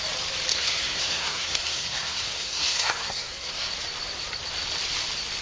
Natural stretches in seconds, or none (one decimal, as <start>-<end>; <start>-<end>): 0.0-0.5; 3.7-5.4